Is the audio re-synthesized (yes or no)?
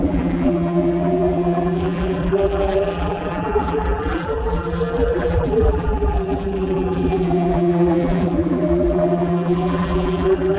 yes